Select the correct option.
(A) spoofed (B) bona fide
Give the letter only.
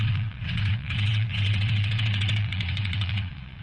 A